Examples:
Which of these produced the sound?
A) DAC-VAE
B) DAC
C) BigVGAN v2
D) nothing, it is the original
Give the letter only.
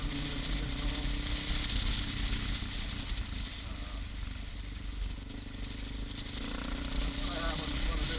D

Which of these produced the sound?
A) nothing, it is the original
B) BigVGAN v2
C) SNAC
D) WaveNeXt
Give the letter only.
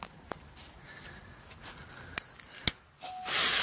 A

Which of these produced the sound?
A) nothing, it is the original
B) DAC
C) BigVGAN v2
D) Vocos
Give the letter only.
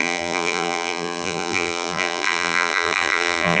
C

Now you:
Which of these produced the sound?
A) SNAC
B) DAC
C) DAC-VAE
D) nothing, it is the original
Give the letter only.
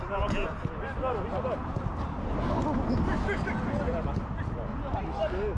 D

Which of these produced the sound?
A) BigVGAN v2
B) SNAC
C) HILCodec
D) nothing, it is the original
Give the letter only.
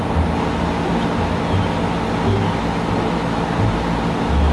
D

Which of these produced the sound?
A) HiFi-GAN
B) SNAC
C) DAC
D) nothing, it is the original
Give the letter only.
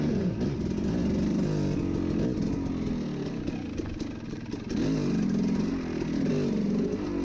D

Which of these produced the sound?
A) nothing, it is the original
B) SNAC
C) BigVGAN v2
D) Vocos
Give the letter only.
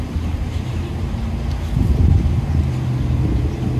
A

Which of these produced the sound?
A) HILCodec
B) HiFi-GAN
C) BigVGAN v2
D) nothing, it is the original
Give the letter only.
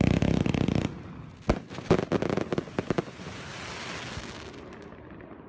D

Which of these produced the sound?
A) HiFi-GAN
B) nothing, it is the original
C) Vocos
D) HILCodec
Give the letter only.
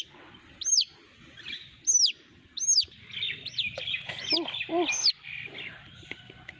B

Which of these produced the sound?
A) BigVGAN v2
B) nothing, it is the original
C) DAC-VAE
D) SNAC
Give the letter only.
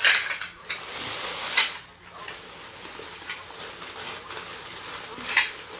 B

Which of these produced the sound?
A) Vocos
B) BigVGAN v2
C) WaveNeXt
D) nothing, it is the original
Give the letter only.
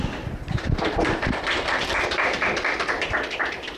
B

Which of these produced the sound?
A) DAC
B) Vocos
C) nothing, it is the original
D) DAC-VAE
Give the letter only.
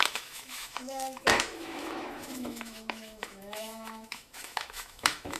D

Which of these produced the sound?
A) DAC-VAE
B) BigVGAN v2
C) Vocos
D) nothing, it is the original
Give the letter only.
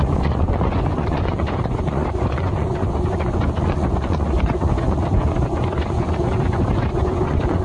C